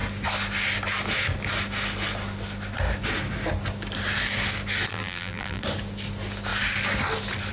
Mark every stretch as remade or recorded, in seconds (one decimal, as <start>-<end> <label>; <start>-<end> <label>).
0.0-4.9 recorded; 4.9-5.6 remade; 5.6-7.5 recorded